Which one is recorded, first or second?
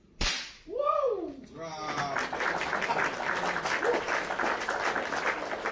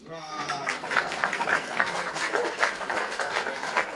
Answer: first